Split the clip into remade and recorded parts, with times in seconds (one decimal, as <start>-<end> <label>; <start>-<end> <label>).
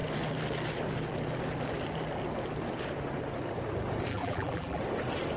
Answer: 0.0-4.1 recorded; 4.1-4.8 remade; 4.8-5.4 recorded